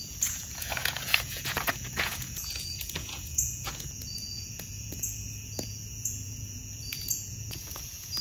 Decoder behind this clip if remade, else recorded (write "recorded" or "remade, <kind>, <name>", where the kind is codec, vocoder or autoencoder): remade, vocoder, Vocos